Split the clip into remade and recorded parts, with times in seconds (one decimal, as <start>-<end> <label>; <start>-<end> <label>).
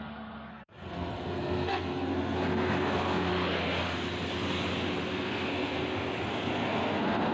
0.0-3.3 remade; 3.3-5.1 recorded; 5.1-5.8 remade; 5.8-6.3 recorded; 6.3-7.3 remade